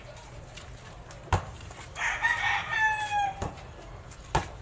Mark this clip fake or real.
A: real